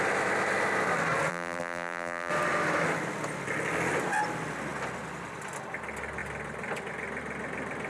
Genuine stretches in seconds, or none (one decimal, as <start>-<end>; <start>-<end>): 0.0-1.3; 2.3-7.9